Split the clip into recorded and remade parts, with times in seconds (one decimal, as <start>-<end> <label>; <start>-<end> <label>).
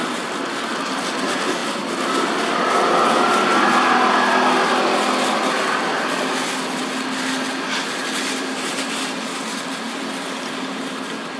0.0-8.0 recorded; 8.0-9.2 remade; 9.2-11.4 recorded